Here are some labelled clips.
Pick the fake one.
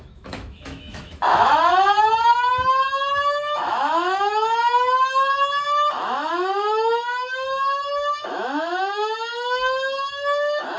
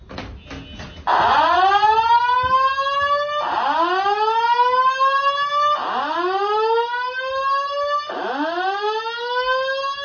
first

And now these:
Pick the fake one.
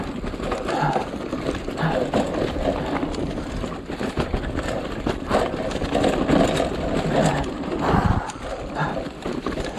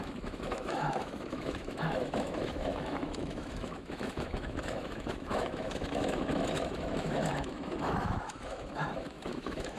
second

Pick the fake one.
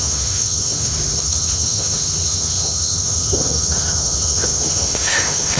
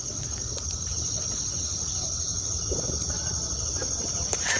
first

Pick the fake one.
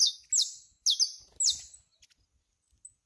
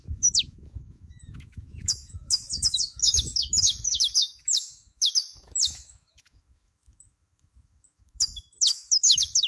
second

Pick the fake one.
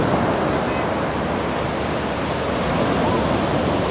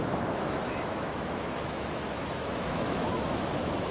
second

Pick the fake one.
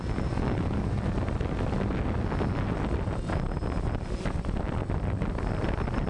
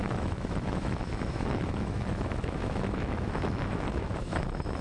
second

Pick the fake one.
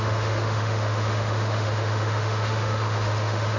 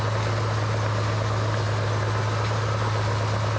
first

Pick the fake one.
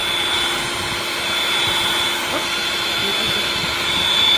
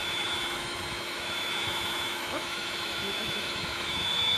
second